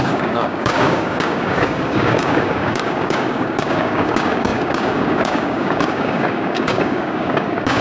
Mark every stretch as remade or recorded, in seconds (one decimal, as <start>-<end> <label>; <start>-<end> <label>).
0.0-7.8 remade